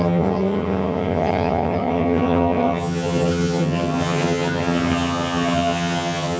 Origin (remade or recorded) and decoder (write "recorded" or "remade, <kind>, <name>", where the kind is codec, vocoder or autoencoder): remade, vocoder, HiFi-GAN